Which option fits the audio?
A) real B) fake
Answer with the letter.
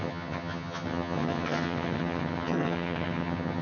B